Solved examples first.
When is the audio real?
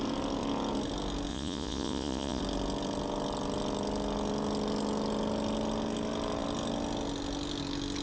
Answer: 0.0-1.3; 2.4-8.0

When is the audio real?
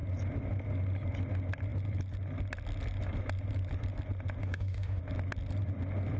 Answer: 0.0-4.4; 5.0-6.2